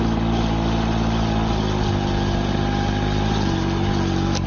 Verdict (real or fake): real